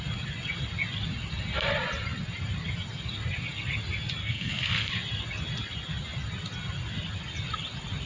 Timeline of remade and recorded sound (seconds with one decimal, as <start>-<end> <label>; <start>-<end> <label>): 0.0-4.2 recorded; 4.2-4.9 remade; 4.9-8.1 recorded

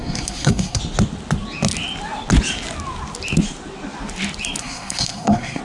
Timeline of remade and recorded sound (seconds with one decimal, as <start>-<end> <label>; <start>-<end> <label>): 0.0-0.8 remade; 0.8-4.6 recorded; 4.6-5.6 remade

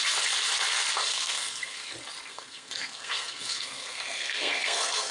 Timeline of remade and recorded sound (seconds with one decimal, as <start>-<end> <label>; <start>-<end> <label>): 0.0-1.1 recorded; 1.1-1.8 remade; 1.8-2.3 recorded; 2.3-5.1 remade